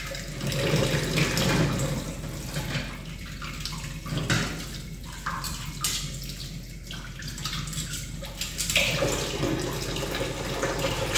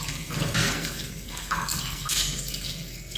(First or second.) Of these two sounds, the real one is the first